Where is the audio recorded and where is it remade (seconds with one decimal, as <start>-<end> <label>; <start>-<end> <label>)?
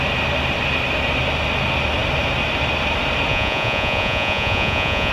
0.0-3.3 recorded; 3.3-5.1 remade